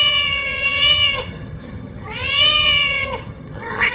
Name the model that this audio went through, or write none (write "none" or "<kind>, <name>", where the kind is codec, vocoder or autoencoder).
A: vocoder, HiFi-GAN